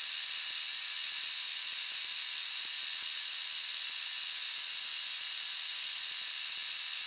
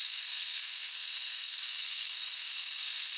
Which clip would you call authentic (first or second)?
first